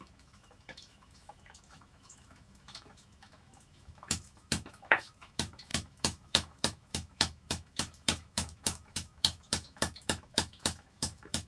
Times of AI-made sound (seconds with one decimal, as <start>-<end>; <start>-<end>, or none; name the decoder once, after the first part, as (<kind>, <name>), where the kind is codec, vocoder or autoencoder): 0.0-11.5 (autoencoder, DAC-VAE)